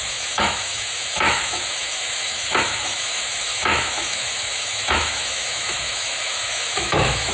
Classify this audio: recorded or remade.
remade